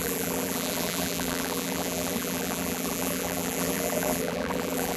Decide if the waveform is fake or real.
fake